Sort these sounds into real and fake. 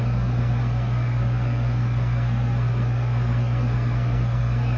fake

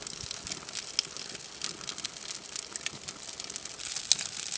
real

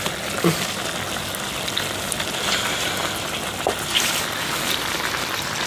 real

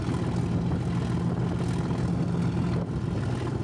real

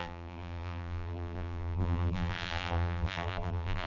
fake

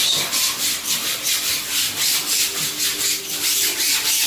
real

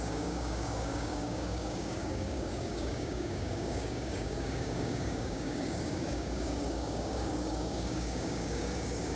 fake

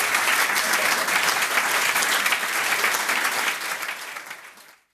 real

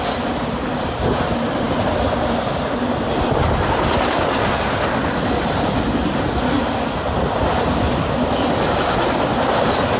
real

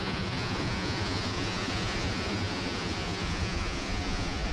fake